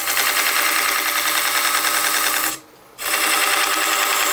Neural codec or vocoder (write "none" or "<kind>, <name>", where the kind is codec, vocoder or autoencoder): none